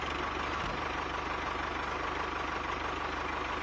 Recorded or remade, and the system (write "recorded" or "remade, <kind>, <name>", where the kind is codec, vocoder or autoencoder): recorded